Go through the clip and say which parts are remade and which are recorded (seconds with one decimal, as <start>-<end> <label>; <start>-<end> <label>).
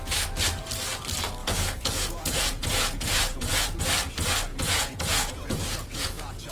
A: 0.0-1.4 recorded; 1.4-3.8 remade; 3.8-4.5 recorded; 4.5-6.5 remade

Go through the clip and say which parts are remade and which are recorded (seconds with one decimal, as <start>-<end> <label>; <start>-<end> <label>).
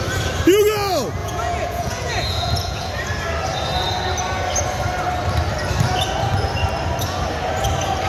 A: 0.0-1.2 recorded; 1.2-2.9 remade; 2.9-8.1 recorded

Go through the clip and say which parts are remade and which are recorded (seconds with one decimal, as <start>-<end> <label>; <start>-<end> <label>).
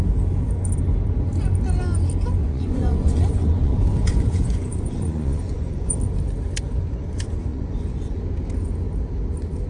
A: 0.0-2.4 recorded; 2.4-6.0 remade; 6.0-7.5 recorded; 7.5-8.2 remade; 8.2-9.7 recorded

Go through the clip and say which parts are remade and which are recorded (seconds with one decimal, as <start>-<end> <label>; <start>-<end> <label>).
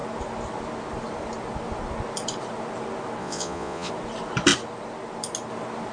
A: 0.0-3.2 recorded; 3.2-3.9 remade; 3.9-5.9 recorded